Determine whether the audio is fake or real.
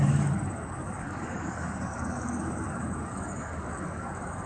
fake